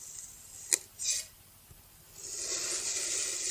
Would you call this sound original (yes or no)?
yes